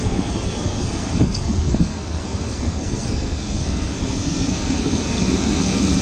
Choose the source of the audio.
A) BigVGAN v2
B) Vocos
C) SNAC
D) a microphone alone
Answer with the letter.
C